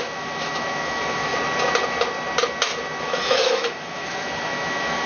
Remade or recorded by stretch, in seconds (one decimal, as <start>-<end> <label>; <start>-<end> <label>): 0.0-1.3 remade; 1.3-3.0 recorded; 3.0-5.1 remade